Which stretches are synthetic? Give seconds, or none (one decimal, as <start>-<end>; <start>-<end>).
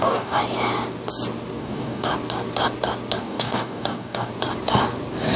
0.0-0.4; 1.6-2.1; 3.2-4.3